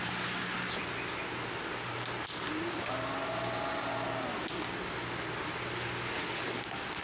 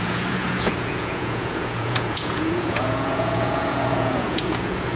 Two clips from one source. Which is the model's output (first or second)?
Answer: second